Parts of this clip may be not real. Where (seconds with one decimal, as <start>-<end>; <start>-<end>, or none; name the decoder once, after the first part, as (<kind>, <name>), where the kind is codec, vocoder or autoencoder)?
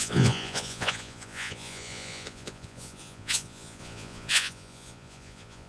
0.0-5.7 (vocoder, Vocos)